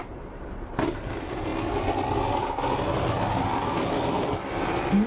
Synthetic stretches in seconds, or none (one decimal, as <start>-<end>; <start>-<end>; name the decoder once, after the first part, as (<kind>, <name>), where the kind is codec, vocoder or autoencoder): 0.0-1.5 (vocoder, BigVGAN v2); 4.6-5.1